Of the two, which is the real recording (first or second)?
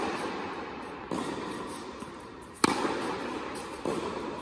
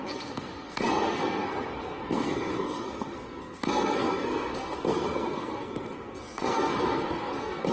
first